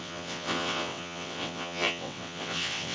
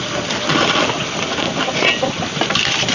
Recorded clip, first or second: second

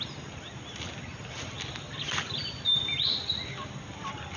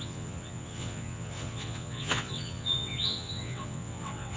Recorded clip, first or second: first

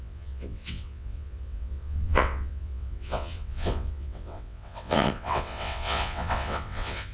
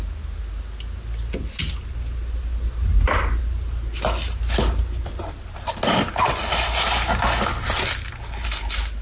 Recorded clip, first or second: second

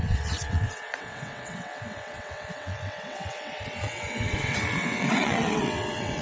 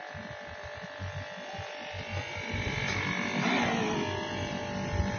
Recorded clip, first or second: second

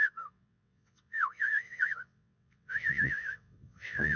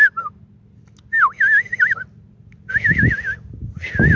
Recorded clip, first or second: second